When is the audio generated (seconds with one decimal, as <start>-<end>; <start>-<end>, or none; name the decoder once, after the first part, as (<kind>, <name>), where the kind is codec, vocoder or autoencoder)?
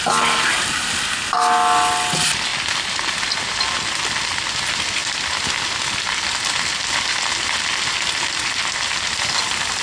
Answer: none